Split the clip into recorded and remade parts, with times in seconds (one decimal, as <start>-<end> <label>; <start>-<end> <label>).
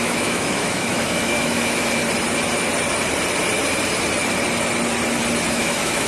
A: 0.0-2.0 remade; 2.0-5.5 recorded; 5.5-6.1 remade